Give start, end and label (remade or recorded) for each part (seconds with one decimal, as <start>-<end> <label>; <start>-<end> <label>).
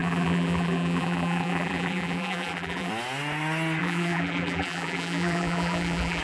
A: 0.0-2.9 remade; 2.9-3.8 recorded; 3.8-6.2 remade